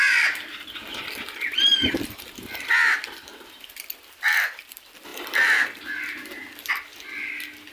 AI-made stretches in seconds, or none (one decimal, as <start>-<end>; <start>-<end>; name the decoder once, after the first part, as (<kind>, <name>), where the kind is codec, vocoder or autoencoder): 0.0-3.0 (vocoder, BigVGAN v2); 3.6-7.7